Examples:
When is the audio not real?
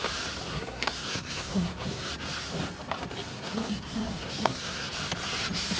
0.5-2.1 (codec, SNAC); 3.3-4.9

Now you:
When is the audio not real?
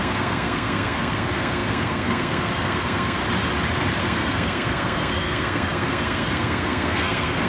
0.0-3.2 (codec, SNAC); 4.0-7.5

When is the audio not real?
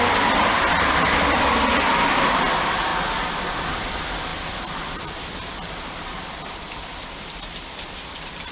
0.0-2.9 (vocoder, BigVGAN v2); 3.7-8.5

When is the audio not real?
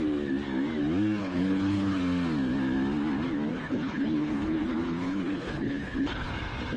1.2-2.0 (codec, HILCodec); 3.5-6.3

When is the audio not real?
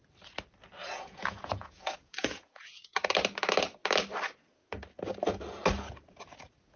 0.8-3.1 (vocoder, Vocos)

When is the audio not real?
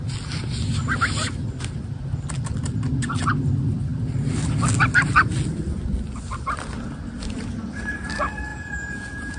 8.5-9.4 (vocoder, Vocos)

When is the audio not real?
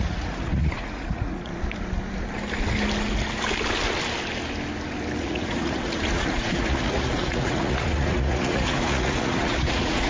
0.0-1.5 (vocoder, Vocos); 5.2-10.1